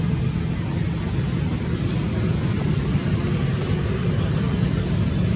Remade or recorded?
recorded